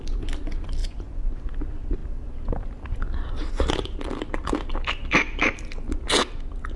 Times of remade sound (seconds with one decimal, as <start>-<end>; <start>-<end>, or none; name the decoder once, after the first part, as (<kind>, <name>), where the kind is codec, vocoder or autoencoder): 0.8-1.5 (vocoder, Vocos)